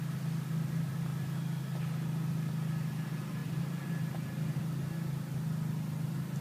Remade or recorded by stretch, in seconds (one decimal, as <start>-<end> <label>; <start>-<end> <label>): 0.0-6.4 recorded